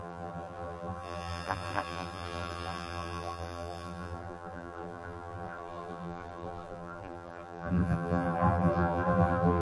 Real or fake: fake